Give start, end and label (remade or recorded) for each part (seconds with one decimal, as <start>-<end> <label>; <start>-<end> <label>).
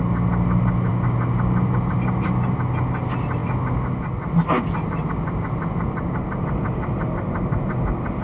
0.0-8.2 recorded